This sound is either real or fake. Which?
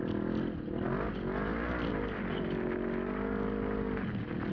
real